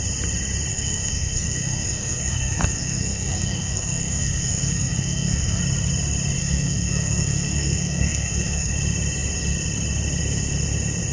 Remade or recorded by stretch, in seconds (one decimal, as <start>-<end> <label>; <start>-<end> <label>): 0.0-0.7 recorded; 0.7-5.6 remade; 5.6-6.4 recorded; 6.4-8.7 remade; 8.7-11.1 recorded